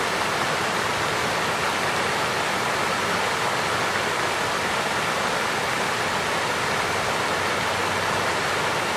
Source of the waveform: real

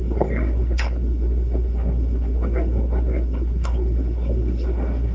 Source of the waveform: fake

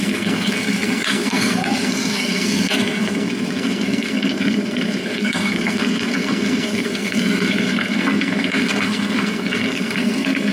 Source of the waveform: fake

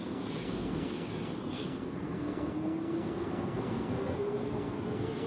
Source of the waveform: fake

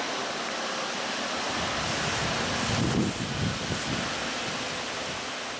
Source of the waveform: real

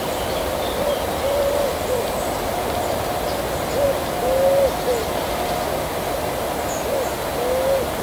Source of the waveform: real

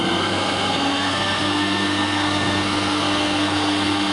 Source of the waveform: fake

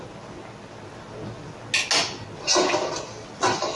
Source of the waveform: real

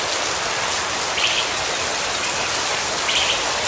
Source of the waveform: real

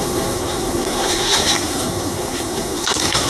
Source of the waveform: fake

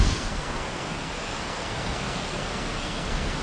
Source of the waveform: fake